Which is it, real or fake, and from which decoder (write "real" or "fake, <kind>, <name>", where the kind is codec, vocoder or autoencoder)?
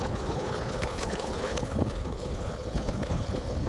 fake, codec, HILCodec